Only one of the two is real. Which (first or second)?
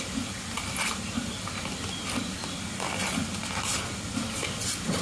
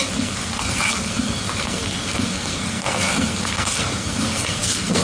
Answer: first